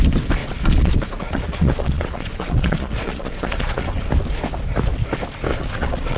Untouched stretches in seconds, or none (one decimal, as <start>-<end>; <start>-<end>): 0.0-0.4; 4.1-5.5